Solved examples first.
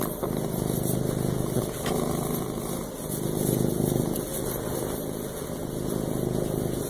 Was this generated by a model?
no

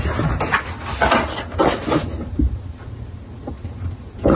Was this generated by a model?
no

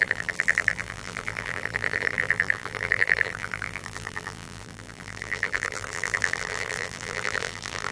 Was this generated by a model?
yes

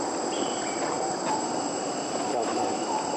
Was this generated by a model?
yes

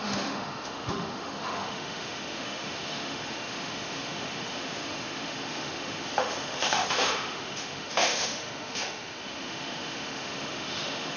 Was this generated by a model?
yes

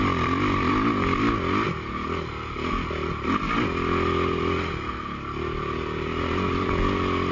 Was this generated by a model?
no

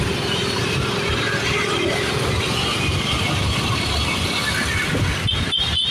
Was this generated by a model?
no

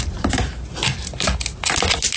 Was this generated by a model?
no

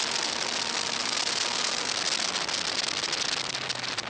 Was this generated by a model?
no